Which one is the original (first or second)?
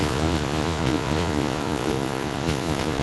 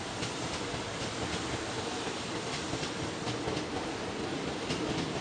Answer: second